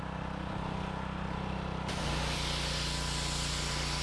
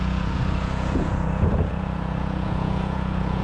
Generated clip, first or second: second